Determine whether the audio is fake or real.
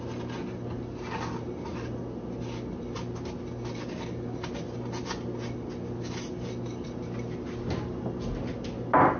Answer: real